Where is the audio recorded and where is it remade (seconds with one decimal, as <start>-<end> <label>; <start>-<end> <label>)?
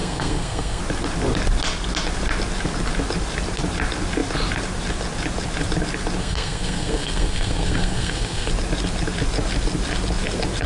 0.0-0.8 remade; 0.8-6.2 recorded; 6.2-8.5 remade; 8.5-10.7 recorded